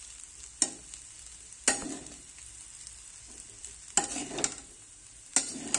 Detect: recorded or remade recorded